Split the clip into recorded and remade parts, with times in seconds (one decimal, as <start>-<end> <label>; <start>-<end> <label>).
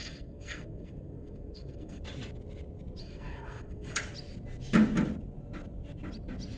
0.0-2.0 remade; 2.0-3.0 recorded; 3.0-4.0 remade; 4.0-6.6 recorded